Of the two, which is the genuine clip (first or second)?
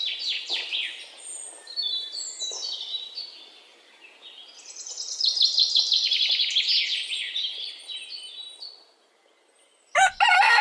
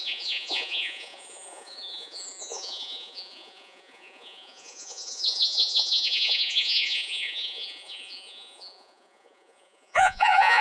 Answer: first